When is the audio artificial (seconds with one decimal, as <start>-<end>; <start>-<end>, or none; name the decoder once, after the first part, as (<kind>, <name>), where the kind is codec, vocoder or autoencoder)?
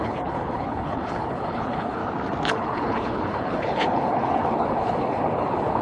0.0-2.0 (codec, HILCodec); 2.5-5.8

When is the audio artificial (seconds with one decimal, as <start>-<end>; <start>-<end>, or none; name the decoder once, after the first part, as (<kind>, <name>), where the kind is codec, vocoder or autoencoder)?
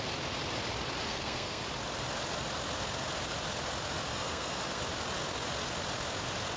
1.0-1.6 (codec, SNAC); 4.1-4.8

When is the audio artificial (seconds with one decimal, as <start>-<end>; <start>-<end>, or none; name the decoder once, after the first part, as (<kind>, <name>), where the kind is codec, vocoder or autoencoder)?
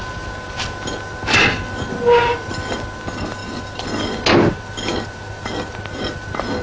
none